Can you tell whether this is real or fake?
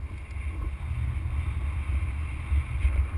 real